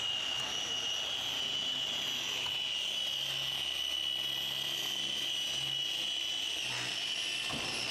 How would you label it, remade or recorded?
recorded